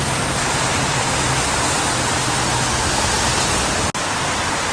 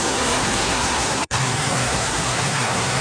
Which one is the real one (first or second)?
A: first